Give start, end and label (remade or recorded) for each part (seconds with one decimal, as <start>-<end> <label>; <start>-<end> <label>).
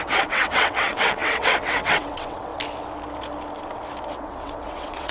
0.0-2.5 remade; 2.5-4.1 recorded; 4.1-5.1 remade